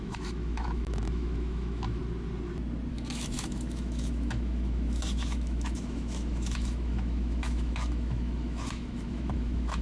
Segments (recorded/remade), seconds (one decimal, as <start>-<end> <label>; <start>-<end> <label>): 0.0-2.0 remade; 2.0-2.9 recorded; 2.9-9.8 remade